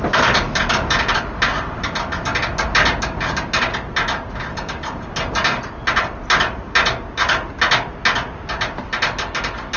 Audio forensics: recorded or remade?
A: recorded